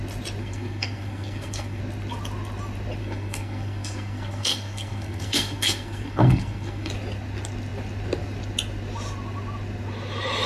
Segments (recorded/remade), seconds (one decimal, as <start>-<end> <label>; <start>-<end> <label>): 0.0-0.4 recorded; 0.4-1.8 remade; 1.8-3.0 recorded; 3.0-6.9 remade; 6.9-10.5 recorded